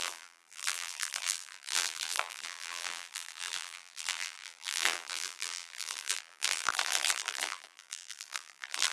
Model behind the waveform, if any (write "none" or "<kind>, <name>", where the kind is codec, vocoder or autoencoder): vocoder, BigVGAN v2